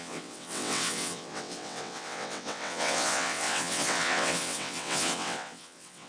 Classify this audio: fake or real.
fake